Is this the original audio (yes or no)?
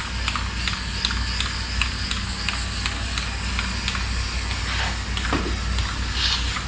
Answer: yes